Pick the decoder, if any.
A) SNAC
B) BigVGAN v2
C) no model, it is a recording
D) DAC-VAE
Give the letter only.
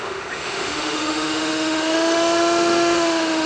D